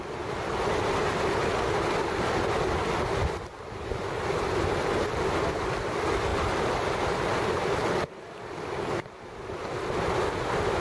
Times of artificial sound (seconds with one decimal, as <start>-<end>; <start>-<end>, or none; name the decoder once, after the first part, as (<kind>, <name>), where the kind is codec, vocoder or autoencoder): 6.3-9.6 (vocoder, BigVGAN v2)